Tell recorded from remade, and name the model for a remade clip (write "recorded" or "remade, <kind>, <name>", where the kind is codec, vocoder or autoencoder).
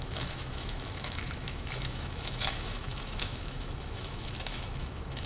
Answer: remade, autoencoder, DAC-VAE